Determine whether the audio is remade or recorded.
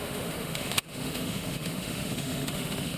remade